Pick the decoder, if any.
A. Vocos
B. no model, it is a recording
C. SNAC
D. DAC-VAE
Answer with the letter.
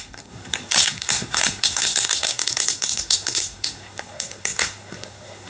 C